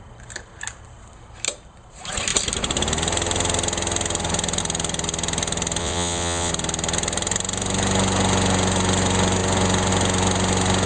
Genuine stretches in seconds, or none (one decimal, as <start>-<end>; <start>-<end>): 0.0-5.8; 6.5-10.9